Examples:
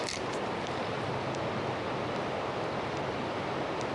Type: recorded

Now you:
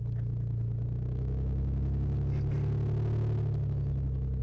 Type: recorded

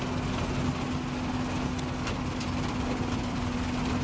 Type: recorded